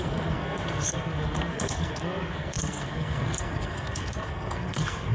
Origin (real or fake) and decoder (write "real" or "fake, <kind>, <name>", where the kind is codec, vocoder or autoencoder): fake, codec, SNAC